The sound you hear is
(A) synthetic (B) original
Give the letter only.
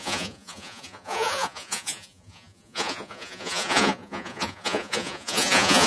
A